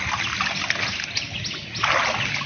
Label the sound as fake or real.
real